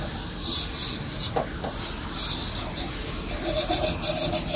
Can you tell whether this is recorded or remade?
recorded